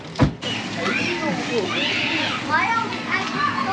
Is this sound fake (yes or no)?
no